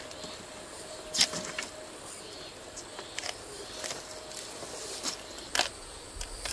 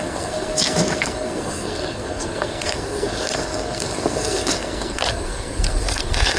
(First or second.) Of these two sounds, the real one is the first